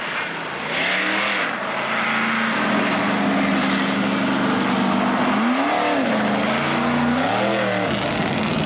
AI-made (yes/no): no